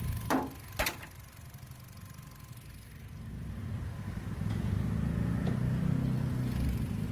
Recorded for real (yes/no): yes